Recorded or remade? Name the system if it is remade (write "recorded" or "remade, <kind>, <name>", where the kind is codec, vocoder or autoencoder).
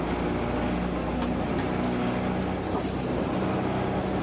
recorded